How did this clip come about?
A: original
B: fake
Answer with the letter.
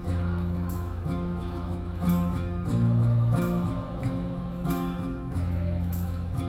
B